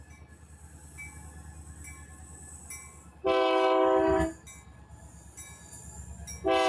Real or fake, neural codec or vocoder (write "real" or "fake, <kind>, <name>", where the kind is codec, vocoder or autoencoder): real